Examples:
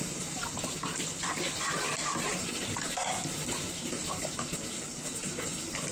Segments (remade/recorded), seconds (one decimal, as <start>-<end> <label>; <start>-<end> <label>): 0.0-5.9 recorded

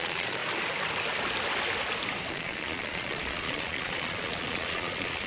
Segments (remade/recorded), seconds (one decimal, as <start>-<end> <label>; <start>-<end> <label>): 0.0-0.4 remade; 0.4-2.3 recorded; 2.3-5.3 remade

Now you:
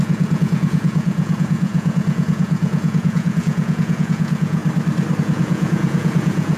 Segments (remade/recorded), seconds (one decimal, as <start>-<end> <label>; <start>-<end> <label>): 0.0-4.6 remade; 4.6-5.2 recorded; 5.2-6.6 remade